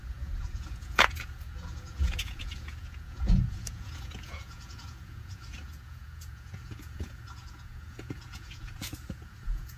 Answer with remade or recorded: remade